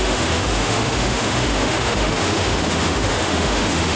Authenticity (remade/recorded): remade